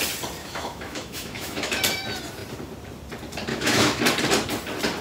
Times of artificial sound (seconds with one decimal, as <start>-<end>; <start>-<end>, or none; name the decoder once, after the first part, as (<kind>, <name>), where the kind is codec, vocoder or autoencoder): 0.4-1.8 (autoencoder, DAC-VAE); 3.5-4.0